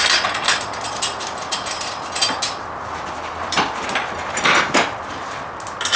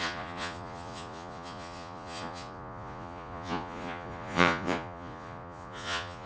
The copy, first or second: second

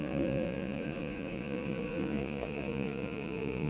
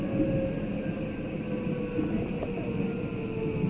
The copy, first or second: first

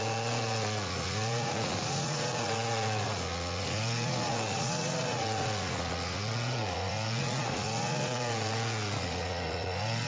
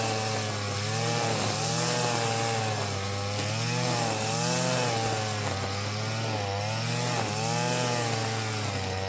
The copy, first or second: first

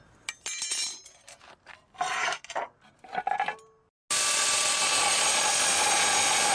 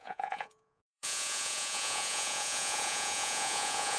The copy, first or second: second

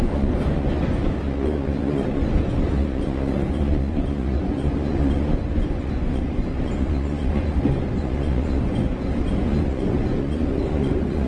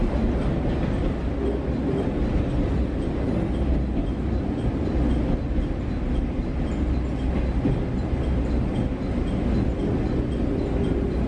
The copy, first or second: first